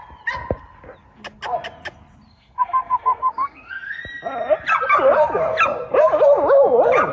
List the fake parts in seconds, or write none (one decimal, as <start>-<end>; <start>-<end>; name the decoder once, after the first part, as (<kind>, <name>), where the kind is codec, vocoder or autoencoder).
2.3-4.0 (codec, SNAC)